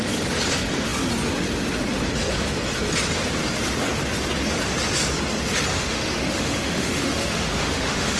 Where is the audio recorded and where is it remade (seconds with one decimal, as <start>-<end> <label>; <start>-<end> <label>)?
0.0-5.7 recorded; 5.7-8.2 remade